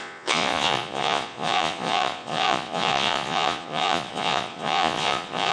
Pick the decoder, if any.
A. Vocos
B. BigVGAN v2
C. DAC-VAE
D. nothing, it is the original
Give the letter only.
A